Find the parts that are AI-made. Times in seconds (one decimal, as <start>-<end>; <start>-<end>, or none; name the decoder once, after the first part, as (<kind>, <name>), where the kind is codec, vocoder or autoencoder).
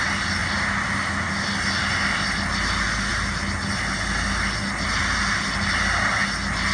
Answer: none